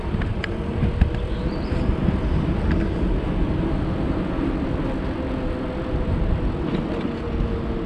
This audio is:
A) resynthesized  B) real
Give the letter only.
B